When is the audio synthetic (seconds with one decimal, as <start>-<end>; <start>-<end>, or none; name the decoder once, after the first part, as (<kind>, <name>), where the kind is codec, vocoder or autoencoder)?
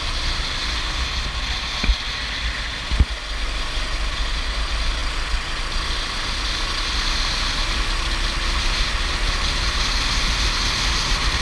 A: none